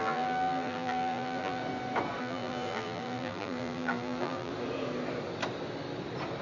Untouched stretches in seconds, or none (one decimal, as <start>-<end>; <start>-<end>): 1.6-2.2; 4.5-6.4